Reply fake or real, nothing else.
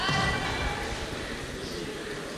real